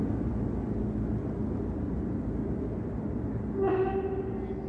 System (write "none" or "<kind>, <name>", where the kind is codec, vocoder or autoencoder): none